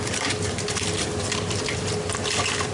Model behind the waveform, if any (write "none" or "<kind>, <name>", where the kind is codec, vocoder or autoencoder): none